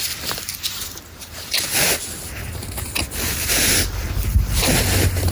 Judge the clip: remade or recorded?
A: remade